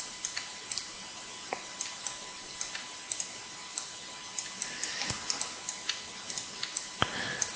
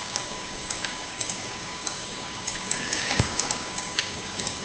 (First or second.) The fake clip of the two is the second